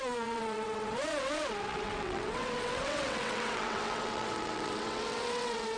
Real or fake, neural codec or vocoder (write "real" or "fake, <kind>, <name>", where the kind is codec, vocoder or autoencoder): fake, vocoder, WaveNeXt